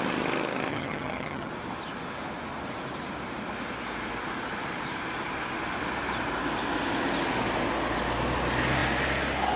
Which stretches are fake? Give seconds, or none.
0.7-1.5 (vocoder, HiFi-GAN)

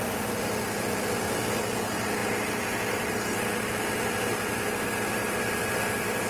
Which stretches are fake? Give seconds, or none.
none

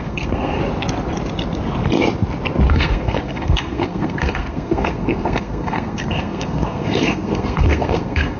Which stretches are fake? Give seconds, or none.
0.0-0.6 (codec, SNAC); 2.7-8.4

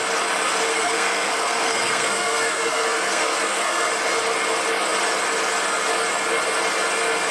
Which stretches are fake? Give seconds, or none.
0.7-3.9 (codec, SNAC)

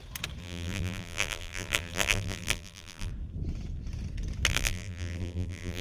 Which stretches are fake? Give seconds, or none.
0.4-3.1 (vocoder, BigVGAN v2); 4.5-5.8